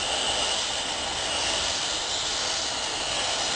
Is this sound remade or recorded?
recorded